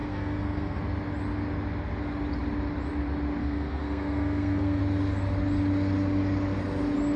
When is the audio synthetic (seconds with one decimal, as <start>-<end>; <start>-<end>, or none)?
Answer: 0.0-0.8; 3.4-4.8